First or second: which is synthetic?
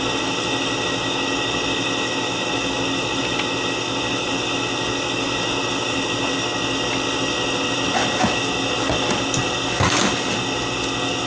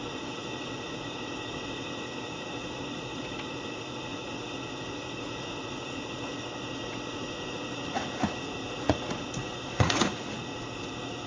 second